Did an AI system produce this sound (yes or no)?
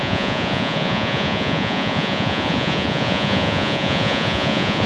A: yes